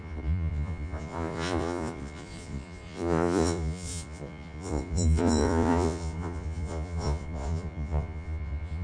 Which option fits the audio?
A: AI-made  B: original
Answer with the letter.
A